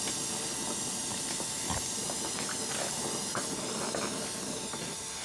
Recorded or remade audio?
recorded